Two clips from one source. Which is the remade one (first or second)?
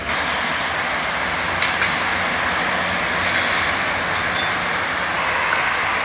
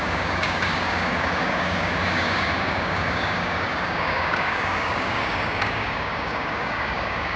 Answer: second